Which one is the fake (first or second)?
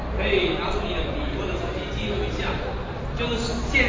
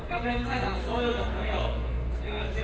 second